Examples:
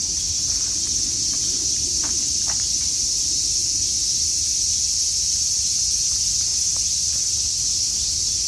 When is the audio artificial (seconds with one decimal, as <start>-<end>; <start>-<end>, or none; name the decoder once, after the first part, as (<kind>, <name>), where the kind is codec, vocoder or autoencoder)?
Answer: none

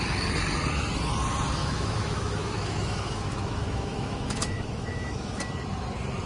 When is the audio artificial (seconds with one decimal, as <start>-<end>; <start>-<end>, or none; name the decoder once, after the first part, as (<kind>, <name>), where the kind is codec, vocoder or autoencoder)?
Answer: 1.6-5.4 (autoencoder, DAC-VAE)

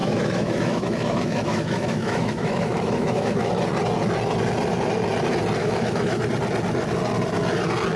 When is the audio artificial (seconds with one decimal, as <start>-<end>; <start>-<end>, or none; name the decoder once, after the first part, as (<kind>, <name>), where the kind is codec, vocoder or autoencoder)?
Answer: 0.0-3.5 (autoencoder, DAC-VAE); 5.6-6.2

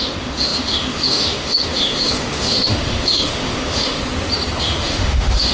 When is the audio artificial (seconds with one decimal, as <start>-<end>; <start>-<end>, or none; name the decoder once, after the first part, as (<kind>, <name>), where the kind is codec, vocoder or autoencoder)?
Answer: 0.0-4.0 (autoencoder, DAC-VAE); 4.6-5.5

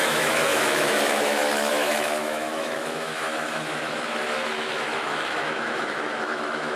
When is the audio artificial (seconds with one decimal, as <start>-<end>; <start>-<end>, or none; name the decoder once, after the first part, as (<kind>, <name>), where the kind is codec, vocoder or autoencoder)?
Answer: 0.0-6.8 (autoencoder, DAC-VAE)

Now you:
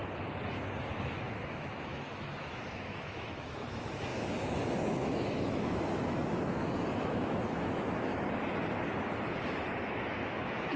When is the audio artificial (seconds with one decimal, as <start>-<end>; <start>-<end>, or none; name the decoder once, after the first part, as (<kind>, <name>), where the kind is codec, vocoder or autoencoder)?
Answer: 0.8-8.1 (autoencoder, DAC-VAE); 9.8-10.8

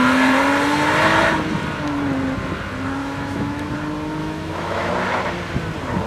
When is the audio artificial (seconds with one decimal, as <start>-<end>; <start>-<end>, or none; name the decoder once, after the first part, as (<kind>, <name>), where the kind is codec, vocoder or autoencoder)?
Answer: 3.0-3.7 (autoencoder, DAC-VAE); 4.2-4.9